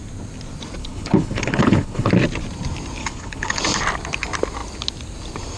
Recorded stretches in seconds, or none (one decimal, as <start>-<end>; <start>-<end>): 0.0-0.8; 2.1-3.0; 3.6-5.6